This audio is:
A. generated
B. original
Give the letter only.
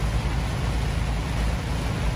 B